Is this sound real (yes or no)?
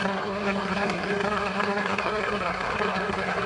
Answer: no